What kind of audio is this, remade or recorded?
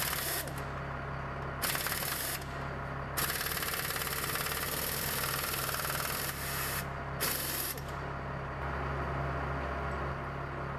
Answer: recorded